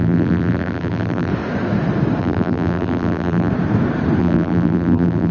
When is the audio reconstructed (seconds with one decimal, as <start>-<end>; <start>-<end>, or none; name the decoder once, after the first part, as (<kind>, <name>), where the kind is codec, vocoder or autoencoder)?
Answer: 0.0-1.3 (vocoder, BigVGAN v2); 2.2-3.5; 4.2-5.3